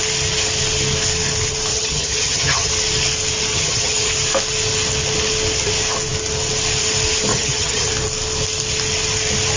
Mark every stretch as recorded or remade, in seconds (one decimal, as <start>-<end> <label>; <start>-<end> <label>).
0.0-1.7 recorded; 1.7-2.7 remade; 2.7-3.5 recorded; 3.5-4.1 remade; 4.1-7.3 recorded; 7.3-7.9 remade; 7.9-9.6 recorded